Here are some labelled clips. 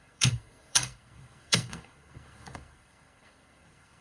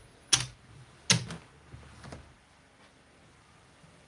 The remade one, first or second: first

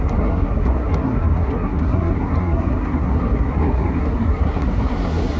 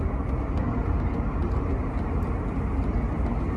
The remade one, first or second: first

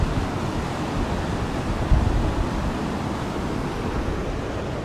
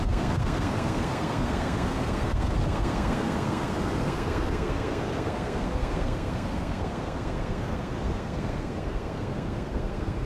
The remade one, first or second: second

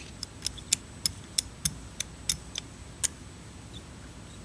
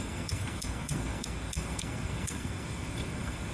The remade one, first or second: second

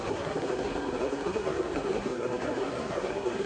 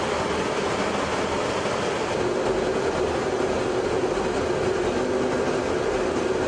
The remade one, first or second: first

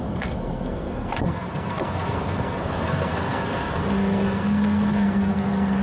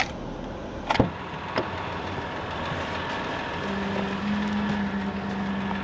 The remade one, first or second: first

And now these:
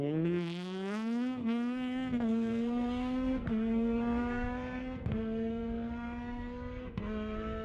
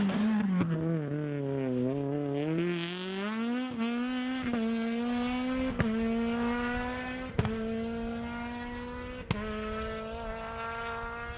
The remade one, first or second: first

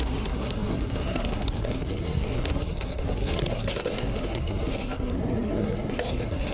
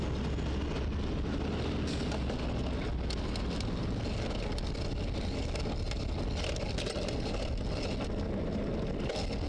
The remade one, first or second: first